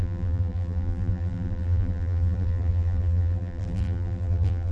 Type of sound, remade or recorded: remade